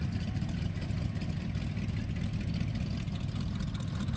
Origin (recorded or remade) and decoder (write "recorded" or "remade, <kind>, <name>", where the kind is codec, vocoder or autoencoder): recorded